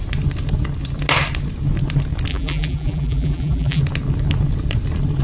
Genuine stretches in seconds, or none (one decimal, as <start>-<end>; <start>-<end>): 0.0-2.3; 3.8-5.2